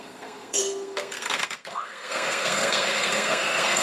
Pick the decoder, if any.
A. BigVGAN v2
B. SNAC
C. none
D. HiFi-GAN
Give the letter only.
B